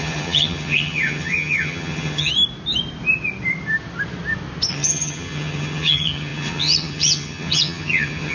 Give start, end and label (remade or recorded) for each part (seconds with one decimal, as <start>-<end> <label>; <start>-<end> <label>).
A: 0.0-2.3 remade; 2.3-4.7 recorded; 4.7-8.3 remade